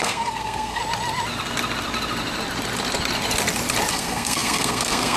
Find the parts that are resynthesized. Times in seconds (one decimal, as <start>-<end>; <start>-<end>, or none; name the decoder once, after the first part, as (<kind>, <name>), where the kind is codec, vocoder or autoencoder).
0.0-0.8 (codec, SNAC); 3.9-5.2

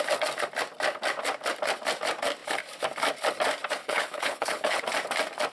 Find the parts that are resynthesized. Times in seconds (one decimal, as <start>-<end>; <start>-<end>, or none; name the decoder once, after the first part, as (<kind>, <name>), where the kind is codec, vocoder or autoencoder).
3.8-4.8 (codec, HILCodec)